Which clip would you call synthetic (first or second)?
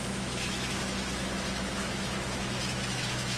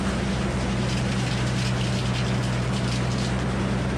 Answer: first